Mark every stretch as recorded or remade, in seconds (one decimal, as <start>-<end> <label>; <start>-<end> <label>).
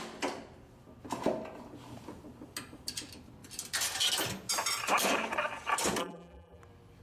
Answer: 0.0-6.0 recorded; 6.0-6.6 remade; 6.6-7.0 recorded